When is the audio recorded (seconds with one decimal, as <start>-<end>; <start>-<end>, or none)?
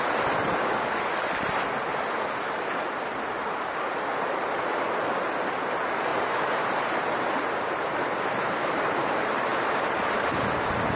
0.0-6.1; 9.1-11.0